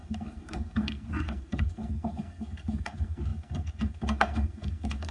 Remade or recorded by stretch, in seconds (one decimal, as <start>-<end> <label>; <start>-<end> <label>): 0.0-5.1 remade